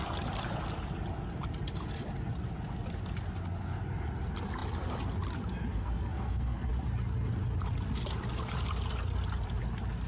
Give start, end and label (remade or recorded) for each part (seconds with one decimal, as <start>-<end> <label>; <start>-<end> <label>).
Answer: 0.0-5.7 recorded; 5.7-6.7 remade; 6.7-10.1 recorded